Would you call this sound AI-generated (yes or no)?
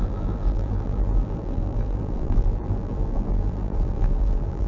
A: yes